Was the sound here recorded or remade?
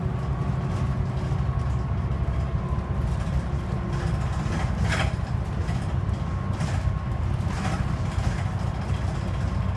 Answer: recorded